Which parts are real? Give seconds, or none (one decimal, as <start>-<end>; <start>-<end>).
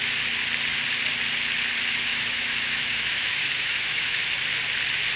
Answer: 0.0-2.1; 4.2-5.2